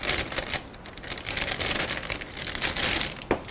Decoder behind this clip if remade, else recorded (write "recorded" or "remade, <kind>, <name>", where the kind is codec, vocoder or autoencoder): recorded